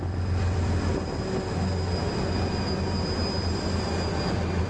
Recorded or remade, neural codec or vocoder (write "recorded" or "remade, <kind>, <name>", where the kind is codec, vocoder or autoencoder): recorded